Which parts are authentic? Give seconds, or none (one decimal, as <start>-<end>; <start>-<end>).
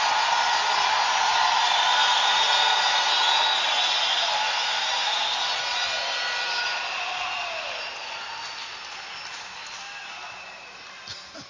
0.0-2.0; 3.1-11.5